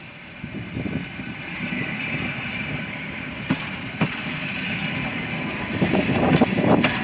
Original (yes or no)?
no